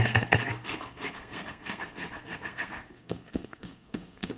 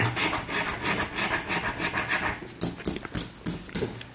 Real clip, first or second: second